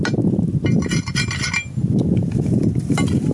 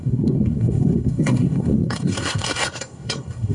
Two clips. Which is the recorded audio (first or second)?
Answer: first